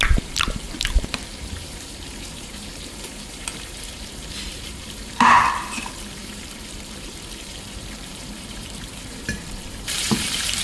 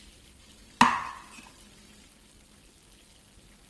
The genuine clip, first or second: second